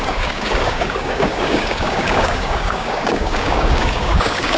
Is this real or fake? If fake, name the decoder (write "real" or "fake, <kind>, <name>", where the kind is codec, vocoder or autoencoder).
fake, codec, DAC